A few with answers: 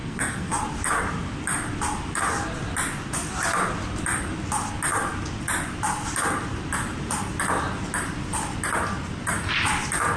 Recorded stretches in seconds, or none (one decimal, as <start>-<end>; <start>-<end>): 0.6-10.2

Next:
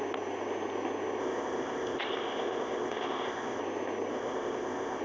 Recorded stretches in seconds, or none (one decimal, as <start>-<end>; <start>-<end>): 0.0-1.2; 3.6-4.1

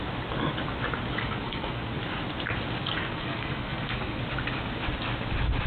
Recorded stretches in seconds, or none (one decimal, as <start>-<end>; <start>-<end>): 0.0-1.2; 2.0-3.0; 4.2-5.7

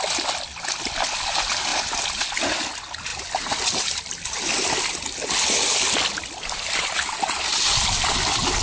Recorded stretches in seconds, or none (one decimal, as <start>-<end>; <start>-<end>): 0.0-8.6